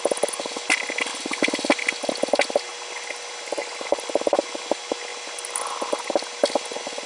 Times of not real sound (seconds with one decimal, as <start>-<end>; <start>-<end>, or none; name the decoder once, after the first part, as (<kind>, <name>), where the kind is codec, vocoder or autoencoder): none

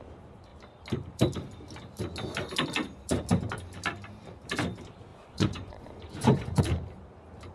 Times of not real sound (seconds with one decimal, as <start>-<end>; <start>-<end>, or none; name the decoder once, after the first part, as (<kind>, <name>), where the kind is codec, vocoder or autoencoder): 5.1-6.6 (vocoder, Vocos)

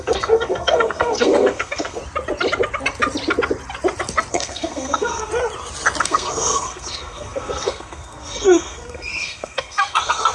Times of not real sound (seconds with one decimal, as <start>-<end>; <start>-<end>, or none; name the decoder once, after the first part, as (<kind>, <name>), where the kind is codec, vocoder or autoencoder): 0.0-2.0 (codec, SNAC); 4.3-5.3; 6.0-10.3